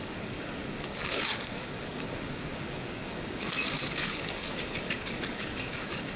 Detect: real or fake fake